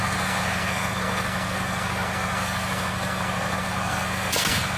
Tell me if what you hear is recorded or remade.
remade